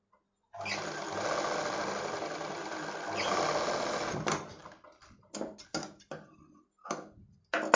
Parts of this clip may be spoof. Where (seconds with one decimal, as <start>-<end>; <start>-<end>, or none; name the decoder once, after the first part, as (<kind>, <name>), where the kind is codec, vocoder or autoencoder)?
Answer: none